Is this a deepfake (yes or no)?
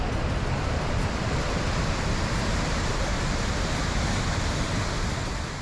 no